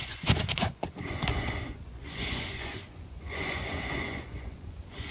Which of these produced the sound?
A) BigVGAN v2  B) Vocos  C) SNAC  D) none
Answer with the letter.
B